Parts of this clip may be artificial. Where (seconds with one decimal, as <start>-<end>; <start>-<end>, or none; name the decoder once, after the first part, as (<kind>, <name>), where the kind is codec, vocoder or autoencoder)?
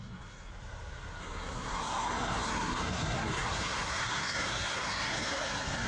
0.0-0.5 (codec, SNAC); 1.2-5.9